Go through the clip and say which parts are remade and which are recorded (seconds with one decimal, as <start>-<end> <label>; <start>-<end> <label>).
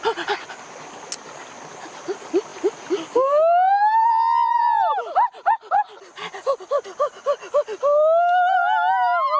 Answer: 0.0-9.4 recorded